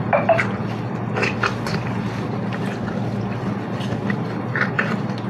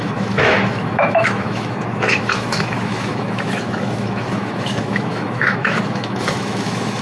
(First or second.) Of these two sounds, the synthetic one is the second